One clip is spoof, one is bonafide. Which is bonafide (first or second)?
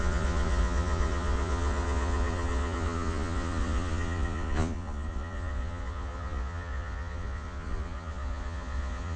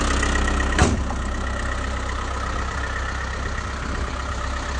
second